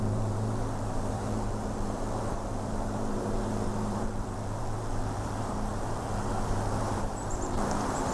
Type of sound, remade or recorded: remade